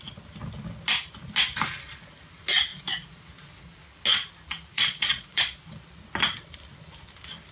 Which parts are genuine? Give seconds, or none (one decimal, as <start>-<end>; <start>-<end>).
0.0-2.7; 3.8-4.7; 5.6-7.5

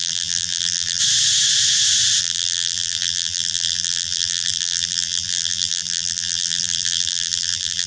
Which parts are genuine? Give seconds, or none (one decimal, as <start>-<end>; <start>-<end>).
1.0-2.2

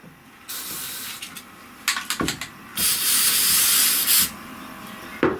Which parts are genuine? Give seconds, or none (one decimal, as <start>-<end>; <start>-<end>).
0.0-5.4

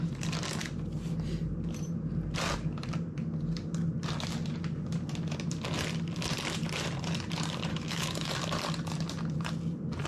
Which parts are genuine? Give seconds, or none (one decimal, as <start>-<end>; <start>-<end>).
0.0-7.7; 8.3-10.1

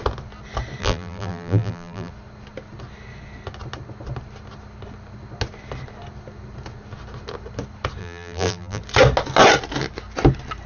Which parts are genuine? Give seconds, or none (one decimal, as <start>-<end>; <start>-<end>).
0.0-0.8; 2.1-8.0; 8.8-10.7

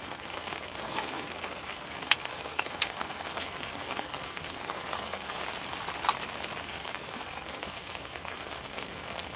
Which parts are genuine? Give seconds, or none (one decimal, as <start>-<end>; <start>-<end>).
5.4-6.6

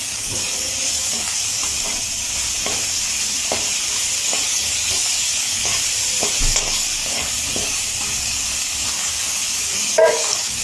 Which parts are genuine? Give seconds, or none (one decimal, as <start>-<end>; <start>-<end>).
1.6-4.2; 5.7-6.4